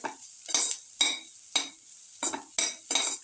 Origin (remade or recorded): recorded